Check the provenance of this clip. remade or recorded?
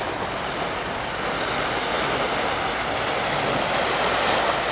recorded